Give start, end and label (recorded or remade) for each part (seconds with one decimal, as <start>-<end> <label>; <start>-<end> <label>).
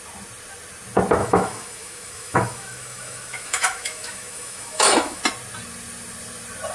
0.0-1.2 recorded; 1.2-5.2 remade; 5.2-6.7 recorded